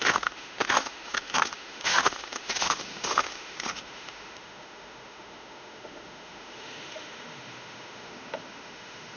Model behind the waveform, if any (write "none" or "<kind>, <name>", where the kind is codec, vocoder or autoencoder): autoencoder, DAC-VAE